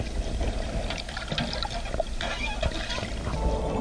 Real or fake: real